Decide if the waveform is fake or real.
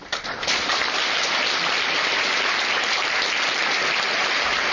real